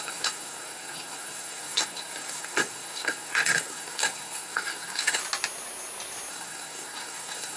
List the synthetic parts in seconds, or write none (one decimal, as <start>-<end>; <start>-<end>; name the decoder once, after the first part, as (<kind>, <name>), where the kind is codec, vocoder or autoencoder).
0.0-5.2 (codec, SNAC); 6.3-7.6